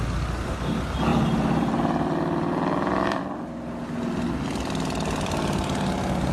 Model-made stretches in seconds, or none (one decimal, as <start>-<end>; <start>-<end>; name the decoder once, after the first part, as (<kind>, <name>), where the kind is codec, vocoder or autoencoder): 1.1-3.2 (vocoder, BigVGAN v2)